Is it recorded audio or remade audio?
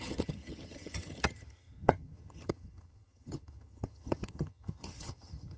remade